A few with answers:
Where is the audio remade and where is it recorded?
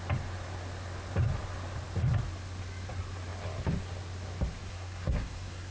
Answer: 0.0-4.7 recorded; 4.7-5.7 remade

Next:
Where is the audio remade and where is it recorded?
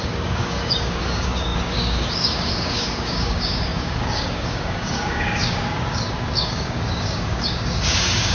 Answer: 0.0-8.3 remade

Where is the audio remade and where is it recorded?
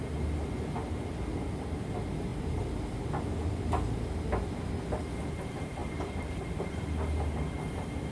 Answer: 0.0-1.3 recorded; 1.3-1.8 remade; 1.8-2.3 recorded; 2.3-3.0 remade; 3.0-5.8 recorded; 5.8-7.6 remade; 7.6-8.1 recorded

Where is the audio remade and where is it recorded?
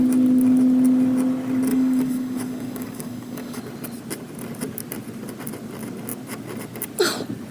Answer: 0.0-1.7 recorded; 1.7-3.6 remade; 3.6-7.5 recorded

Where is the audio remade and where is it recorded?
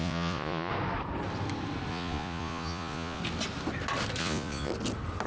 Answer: 0.0-0.7 remade; 0.7-1.9 recorded; 1.9-3.2 remade; 3.2-4.2 recorded; 4.2-4.7 remade; 4.7-5.3 recorded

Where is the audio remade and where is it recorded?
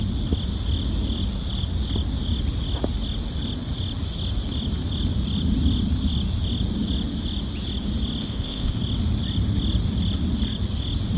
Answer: 0.0-8.2 recorded; 8.2-8.8 remade; 8.8-11.2 recorded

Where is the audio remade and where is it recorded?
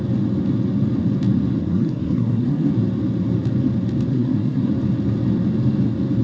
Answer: 0.0-1.6 recorded; 1.6-2.7 remade; 2.7-4.1 recorded; 4.1-4.7 remade; 4.7-6.2 recorded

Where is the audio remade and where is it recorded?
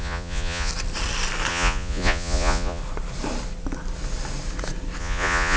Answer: 0.0-0.7 remade; 0.7-1.5 recorded; 1.5-2.8 remade; 2.8-5.0 recorded; 5.0-5.6 remade